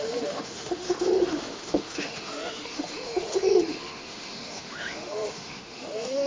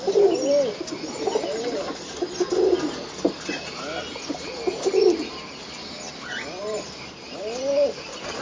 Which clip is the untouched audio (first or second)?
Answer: second